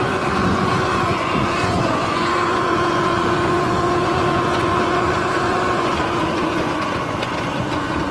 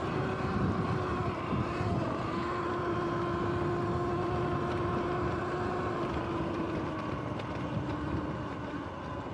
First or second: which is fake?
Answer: first